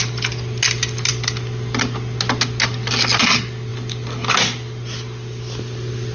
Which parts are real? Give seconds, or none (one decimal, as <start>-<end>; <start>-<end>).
0.0-6.1

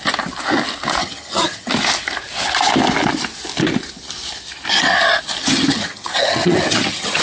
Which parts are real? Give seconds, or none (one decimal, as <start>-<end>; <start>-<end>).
0.0-1.0; 1.7-5.4

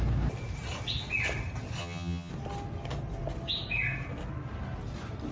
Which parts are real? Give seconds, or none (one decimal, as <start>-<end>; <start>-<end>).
0.0-1.8; 2.3-5.3

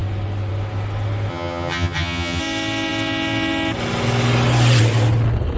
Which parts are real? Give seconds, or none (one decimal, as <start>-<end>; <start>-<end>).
0.0-1.3; 2.4-5.6